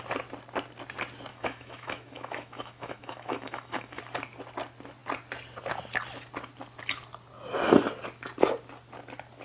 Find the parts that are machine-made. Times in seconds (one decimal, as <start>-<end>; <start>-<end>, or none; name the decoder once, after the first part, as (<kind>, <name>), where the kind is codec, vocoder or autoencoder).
1.3-4.0 (autoencoder, DAC-VAE)